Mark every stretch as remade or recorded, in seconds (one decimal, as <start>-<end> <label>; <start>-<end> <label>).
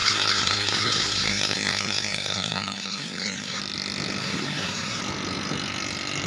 0.0-3.6 remade; 3.6-4.2 recorded; 4.2-5.0 remade; 5.0-6.3 recorded